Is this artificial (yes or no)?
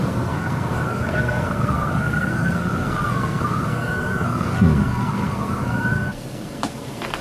yes